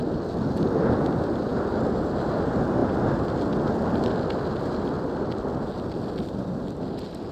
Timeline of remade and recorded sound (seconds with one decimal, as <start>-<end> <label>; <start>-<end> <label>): 0.0-7.3 recorded